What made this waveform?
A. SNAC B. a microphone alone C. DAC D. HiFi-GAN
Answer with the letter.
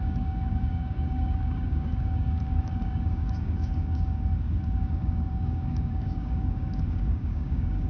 C